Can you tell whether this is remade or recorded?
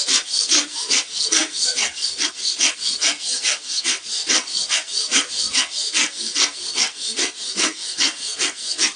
remade